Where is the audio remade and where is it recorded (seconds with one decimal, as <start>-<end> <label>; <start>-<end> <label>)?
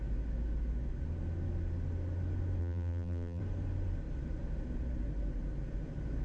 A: 0.0-2.6 recorded; 2.6-3.4 remade; 3.4-6.2 recorded